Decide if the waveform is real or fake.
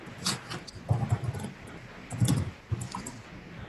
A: real